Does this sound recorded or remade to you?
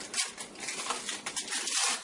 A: recorded